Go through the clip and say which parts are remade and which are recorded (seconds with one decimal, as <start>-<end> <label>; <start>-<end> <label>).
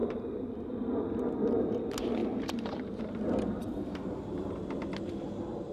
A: 0.0-0.7 remade; 0.7-2.2 recorded; 2.2-3.0 remade; 3.0-3.6 recorded; 3.6-4.6 remade; 4.6-5.7 recorded